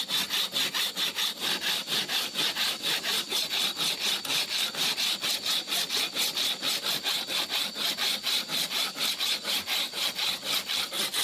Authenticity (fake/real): real